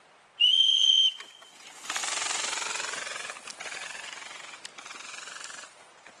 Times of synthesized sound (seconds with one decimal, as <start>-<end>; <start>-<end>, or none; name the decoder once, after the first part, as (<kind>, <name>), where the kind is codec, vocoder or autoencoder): 0.0-1.0 (vocoder, Vocos); 1.6-2.0; 5.7-6.2